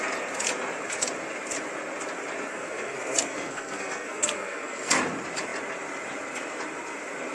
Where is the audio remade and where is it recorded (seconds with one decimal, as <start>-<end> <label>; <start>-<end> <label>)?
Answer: 0.0-2.5 recorded; 2.5-4.9 remade; 4.9-7.3 recorded